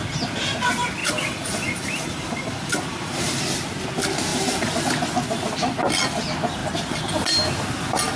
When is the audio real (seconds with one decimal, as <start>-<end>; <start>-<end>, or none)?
0.0-1.0; 3.4-4.3; 4.8-8.2